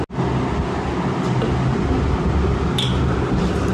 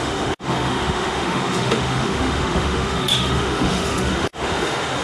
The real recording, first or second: first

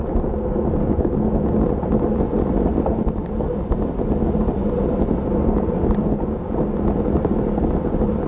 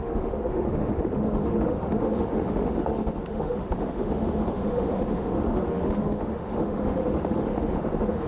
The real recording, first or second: first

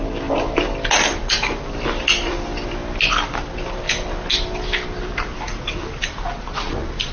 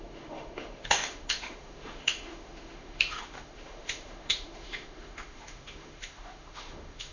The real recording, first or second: first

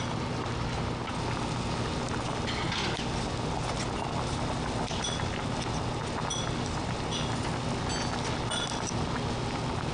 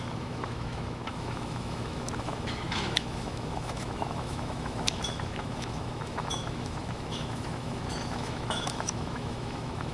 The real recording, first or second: first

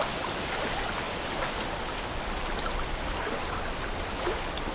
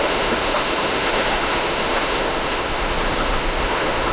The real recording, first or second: first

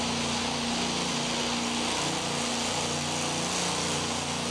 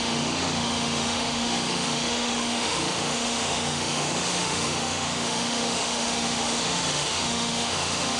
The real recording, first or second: first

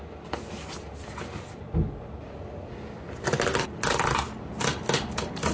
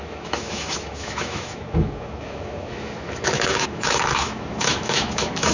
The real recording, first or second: first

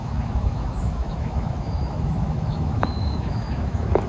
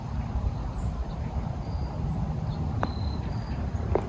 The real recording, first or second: second